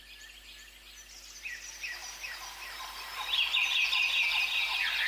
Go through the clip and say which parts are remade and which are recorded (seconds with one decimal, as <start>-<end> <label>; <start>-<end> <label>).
0.0-5.1 recorded